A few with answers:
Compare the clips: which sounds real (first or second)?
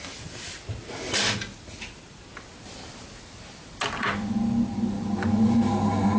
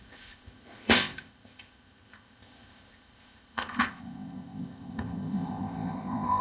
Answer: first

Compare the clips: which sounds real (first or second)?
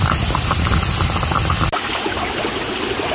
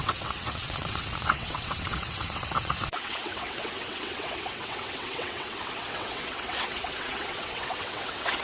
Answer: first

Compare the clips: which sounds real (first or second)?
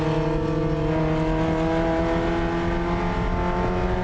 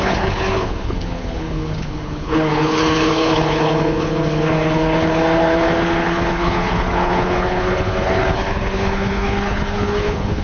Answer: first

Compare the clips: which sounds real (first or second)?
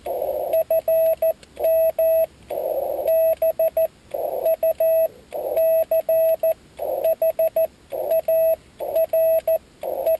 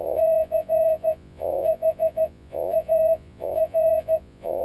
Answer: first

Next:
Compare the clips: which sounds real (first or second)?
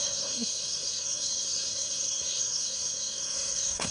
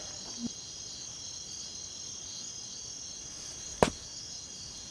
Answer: second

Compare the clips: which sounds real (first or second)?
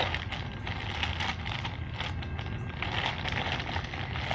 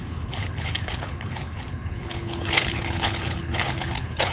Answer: first